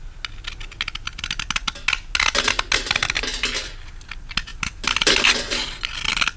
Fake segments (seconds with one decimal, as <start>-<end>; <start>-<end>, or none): none